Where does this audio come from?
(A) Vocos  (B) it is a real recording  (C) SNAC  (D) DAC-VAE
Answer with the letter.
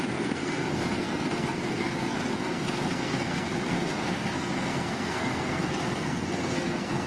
C